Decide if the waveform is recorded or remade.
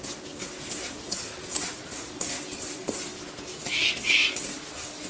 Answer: recorded